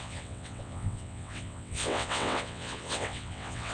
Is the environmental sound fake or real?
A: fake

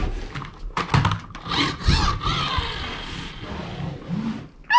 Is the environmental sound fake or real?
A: real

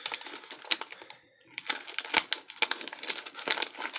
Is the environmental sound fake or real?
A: real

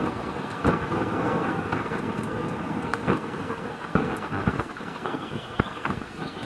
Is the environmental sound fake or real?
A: fake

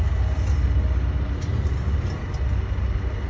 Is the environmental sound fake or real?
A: real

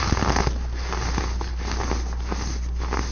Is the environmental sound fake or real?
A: real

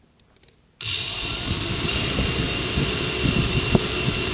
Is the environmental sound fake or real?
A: fake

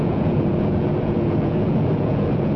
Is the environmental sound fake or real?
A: fake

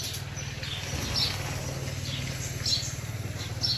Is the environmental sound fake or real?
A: real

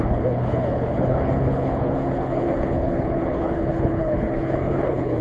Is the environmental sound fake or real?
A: fake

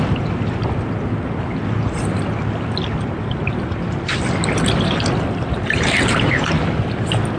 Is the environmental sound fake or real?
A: real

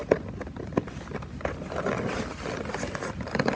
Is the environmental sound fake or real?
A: real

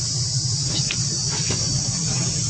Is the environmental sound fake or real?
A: real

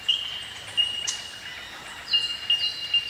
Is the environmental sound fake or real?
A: real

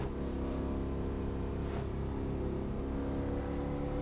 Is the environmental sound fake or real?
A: real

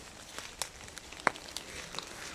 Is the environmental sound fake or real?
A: real